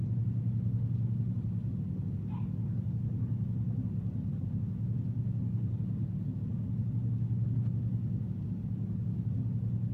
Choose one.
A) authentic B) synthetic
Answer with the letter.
A